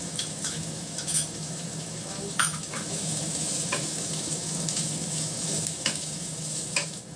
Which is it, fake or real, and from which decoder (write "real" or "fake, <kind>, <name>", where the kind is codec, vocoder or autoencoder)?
fake, autoencoder, DAC-VAE